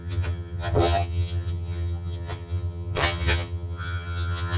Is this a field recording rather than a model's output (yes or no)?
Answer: no